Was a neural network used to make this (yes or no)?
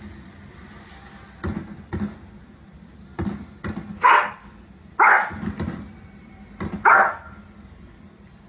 no